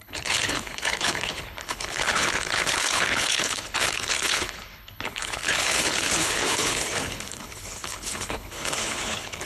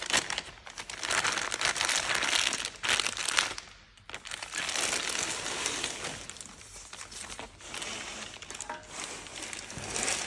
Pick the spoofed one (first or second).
first